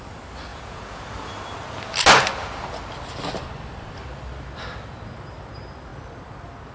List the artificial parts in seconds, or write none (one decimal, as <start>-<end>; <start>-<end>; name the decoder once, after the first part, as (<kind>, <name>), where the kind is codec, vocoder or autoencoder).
0.5-1.0 (vocoder, Vocos)